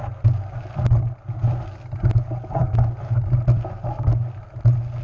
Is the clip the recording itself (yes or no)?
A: yes